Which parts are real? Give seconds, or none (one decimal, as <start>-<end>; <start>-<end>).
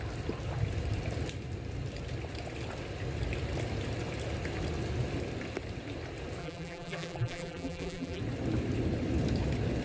0.0-6.4; 8.2-9.8